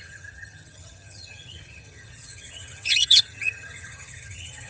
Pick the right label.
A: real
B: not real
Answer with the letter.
B